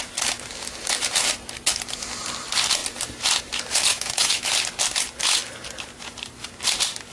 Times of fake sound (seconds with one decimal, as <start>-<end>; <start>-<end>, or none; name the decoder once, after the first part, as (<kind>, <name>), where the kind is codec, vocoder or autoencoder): 3.9-4.5 (autoencoder, DAC-VAE)

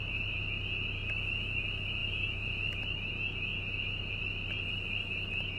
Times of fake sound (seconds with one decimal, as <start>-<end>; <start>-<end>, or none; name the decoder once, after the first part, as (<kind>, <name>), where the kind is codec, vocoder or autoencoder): none

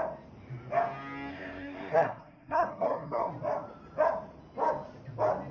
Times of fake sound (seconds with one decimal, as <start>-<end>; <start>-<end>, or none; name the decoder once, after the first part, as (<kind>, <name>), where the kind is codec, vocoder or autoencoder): 1.3-3.3 (codec, SNAC)

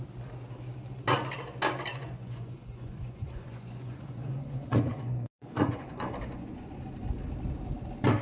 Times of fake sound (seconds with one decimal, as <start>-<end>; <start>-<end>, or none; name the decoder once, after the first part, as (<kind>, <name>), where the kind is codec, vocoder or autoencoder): 1.9-6.8 (vocoder, Vocos)

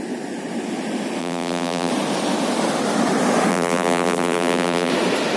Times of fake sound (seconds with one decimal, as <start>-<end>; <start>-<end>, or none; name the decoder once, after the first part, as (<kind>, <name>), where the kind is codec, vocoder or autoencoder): 1.2-1.9 (vocoder, BigVGAN v2); 3.5-4.9

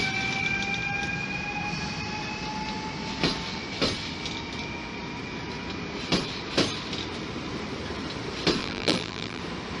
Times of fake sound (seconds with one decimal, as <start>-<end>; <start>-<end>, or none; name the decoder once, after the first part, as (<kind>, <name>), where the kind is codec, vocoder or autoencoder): 8.6-9.4 (vocoder, BigVGAN v2)

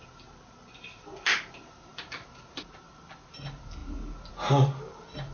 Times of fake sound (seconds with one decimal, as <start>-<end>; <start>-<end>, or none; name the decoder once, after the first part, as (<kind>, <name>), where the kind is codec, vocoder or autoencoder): none

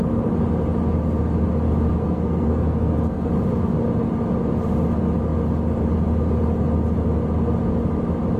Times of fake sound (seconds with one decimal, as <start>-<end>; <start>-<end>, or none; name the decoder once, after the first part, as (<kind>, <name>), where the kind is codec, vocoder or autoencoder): 1.9-3.3 (codec, SNAC)